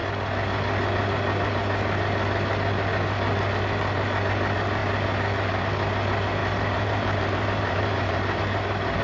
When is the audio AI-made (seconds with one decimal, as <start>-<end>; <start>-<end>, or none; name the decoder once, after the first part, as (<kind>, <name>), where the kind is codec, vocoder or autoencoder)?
6.4-8.4 (vocoder, BigVGAN v2)